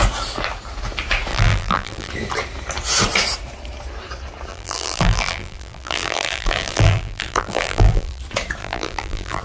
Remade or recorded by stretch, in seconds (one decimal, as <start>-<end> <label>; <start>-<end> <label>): 0.0-1.3 recorded; 1.3-2.1 remade; 2.1-4.5 recorded; 4.5-8.2 remade; 8.2-8.6 recorded; 8.6-9.4 remade